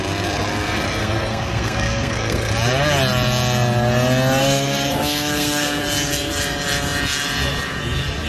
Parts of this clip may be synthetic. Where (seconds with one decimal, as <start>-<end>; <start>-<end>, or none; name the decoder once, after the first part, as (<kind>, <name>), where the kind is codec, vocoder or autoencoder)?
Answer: 1.0-2.5 (codec, SNAC); 4.4-5.8